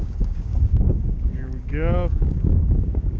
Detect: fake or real fake